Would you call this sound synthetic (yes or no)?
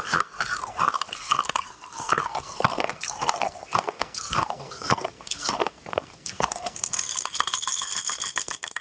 yes